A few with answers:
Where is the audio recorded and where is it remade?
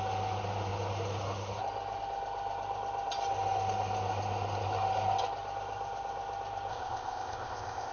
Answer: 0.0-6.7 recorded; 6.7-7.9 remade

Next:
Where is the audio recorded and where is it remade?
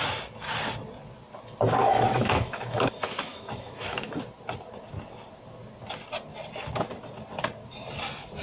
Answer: 0.0-1.8 recorded; 1.8-4.1 remade; 4.1-8.4 recorded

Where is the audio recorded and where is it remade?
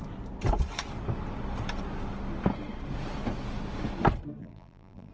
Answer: 0.0-4.4 recorded; 4.4-5.1 remade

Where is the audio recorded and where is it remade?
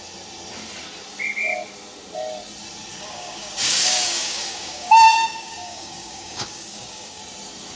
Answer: 0.0-3.0 recorded; 3.0-7.2 remade; 7.2-7.8 recorded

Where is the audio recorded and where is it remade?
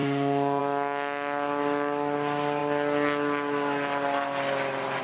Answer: 0.0-0.6 remade; 0.6-5.0 recorded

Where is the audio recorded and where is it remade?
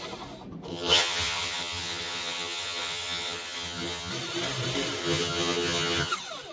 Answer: 0.0-0.7 recorded; 0.7-4.1 remade; 4.1-5.0 recorded; 5.0-6.1 remade; 6.1-6.5 recorded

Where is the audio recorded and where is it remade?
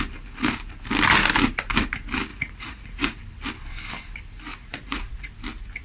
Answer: 0.0-2.3 recorded; 2.3-3.2 remade; 3.2-4.5 recorded; 4.5-5.3 remade; 5.3-5.8 recorded